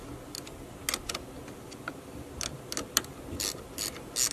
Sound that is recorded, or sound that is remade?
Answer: recorded